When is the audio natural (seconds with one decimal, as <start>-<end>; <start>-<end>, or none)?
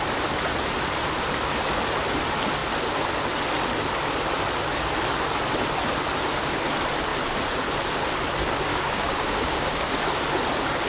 0.0-8.7; 9.9-10.9